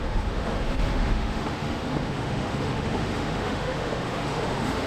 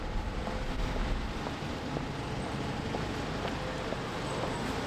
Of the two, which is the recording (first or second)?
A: second